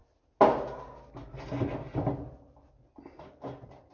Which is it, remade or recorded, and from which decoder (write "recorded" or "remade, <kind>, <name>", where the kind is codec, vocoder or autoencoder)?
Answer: recorded